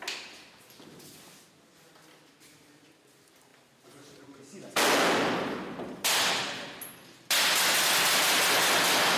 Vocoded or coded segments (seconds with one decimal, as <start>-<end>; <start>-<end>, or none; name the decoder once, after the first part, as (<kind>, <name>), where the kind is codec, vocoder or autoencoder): none